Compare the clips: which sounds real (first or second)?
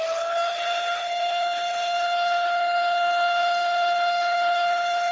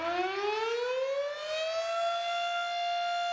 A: second